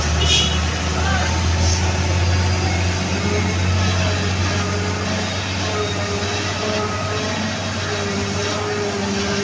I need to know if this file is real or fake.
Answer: real